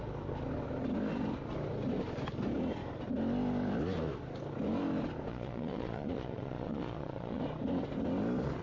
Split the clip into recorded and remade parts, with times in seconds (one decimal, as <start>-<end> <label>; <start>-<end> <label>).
0.0-5.3 recorded; 5.3-7.4 remade; 7.4-8.6 recorded